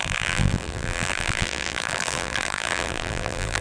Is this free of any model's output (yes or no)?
no